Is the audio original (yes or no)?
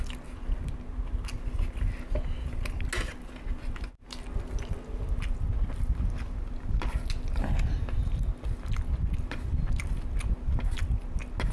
yes